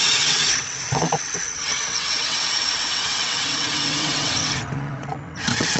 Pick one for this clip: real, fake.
fake